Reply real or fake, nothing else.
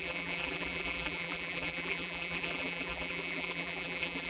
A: fake